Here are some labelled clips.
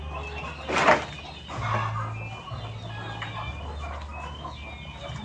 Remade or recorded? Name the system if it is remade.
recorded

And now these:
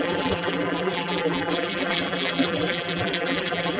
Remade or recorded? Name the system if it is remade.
remade, vocoder, BigVGAN v2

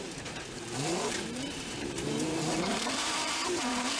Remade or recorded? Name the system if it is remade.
remade, vocoder, BigVGAN v2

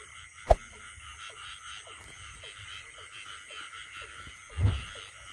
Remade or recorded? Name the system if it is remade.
recorded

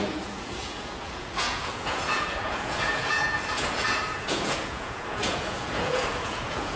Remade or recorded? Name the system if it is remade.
remade, vocoder, Vocos